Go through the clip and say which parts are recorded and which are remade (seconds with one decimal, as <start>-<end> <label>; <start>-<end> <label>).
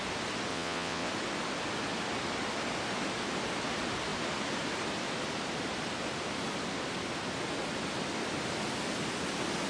0.0-0.5 recorded; 0.5-1.1 remade; 1.1-9.7 recorded